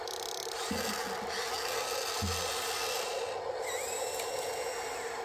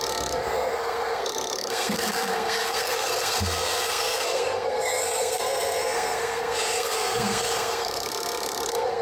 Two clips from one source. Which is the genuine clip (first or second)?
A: first